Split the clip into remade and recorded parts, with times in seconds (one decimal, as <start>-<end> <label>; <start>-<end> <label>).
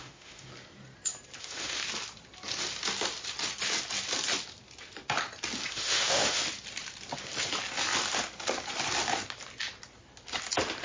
0.0-0.5 remade; 0.5-1.4 recorded; 1.4-1.8 remade; 1.8-5.7 recorded; 5.7-6.4 remade; 6.4-10.8 recorded